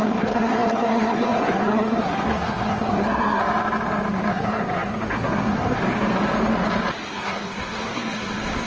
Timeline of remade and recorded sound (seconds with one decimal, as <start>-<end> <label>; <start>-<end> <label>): 0.0-3.4 remade; 3.4-4.3 recorded; 4.3-5.8 remade; 5.8-7.1 recorded; 7.1-8.7 remade